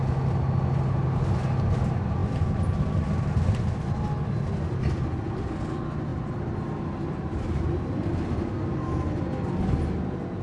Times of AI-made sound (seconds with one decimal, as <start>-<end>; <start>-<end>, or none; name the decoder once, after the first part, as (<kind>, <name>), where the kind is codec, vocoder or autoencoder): none